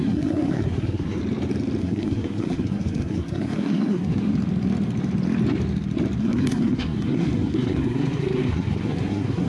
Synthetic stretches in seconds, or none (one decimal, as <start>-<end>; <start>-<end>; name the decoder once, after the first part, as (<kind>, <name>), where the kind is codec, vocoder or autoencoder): 0.0-1.2 (codec, SNAC); 1.8-4.3; 6.2-9.5